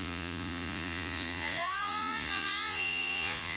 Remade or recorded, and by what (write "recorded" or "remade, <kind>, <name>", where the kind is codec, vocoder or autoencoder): remade, vocoder, Vocos